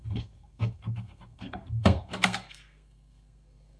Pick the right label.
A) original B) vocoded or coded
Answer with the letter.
B